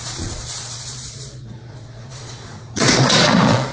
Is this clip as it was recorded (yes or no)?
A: no